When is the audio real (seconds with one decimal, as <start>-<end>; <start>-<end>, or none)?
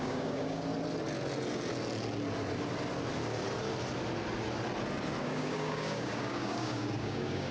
0.7-5.2